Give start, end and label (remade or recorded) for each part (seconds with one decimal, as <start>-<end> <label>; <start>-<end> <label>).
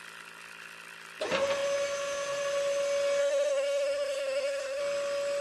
0.0-3.2 recorded; 3.2-4.8 remade; 4.8-5.4 recorded